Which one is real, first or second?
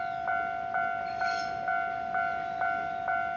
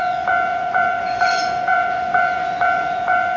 first